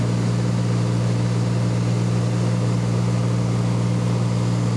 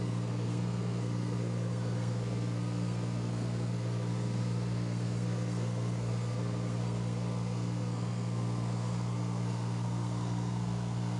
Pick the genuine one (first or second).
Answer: first